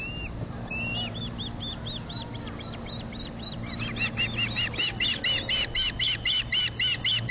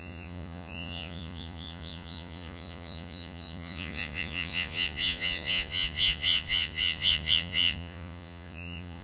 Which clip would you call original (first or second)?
first